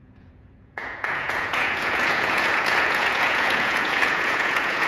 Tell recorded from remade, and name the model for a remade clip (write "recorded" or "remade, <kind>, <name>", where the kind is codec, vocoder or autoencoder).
remade, vocoder, Vocos